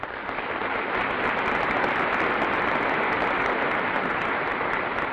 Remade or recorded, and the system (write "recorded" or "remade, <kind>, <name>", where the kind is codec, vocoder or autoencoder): recorded